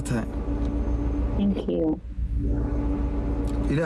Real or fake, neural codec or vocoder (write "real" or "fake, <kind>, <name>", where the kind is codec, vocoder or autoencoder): real